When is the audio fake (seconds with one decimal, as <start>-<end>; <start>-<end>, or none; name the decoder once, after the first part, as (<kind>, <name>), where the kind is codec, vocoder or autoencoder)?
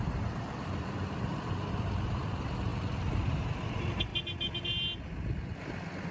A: 0.0-1.3 (vocoder, BigVGAN v2); 1.9-4.1